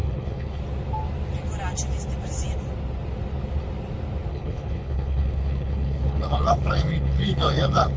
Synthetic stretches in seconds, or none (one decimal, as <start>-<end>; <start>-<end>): 0.0-0.6; 4.3-8.0